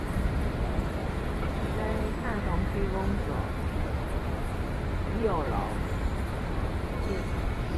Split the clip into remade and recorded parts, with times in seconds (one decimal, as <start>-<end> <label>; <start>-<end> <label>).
0.0-1.0 remade; 1.0-1.5 recorded; 1.5-2.8 remade; 2.8-3.5 recorded; 3.5-7.8 remade